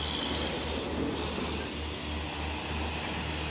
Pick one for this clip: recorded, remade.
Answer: recorded